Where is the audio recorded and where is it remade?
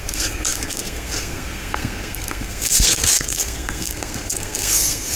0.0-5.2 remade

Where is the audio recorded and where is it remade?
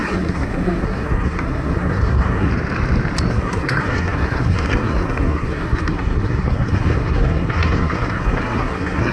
0.0-2.5 remade; 2.5-3.3 recorded; 3.3-9.1 remade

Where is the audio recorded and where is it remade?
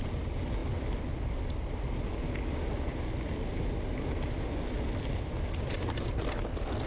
0.0-6.9 recorded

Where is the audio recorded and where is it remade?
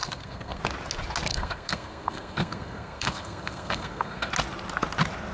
0.0-0.6 remade; 0.6-1.3 recorded; 1.3-4.3 remade; 4.3-5.3 recorded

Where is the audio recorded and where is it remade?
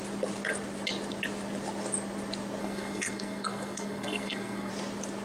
0.0-2.6 recorded; 2.6-4.7 remade; 4.7-5.2 recorded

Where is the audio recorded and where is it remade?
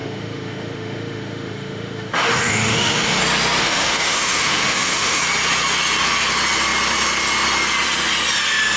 0.0-3.2 remade; 3.2-3.6 recorded; 3.6-5.2 remade; 5.2-8.8 recorded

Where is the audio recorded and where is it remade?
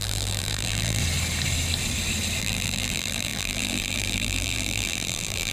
0.0-1.0 remade; 1.0-2.4 recorded; 2.4-5.5 remade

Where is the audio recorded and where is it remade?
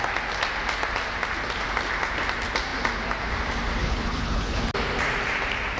0.0-3.8 recorded; 3.8-4.6 remade; 4.6-5.8 recorded